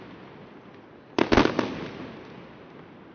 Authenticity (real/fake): real